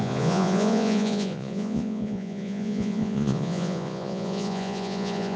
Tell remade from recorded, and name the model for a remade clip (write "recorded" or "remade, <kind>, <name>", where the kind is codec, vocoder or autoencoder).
remade, vocoder, Vocos